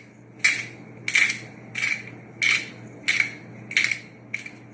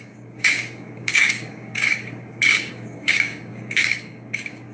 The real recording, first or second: first